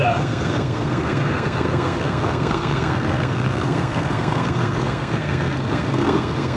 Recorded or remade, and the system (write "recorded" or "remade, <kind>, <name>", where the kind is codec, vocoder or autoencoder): remade, codec, SNAC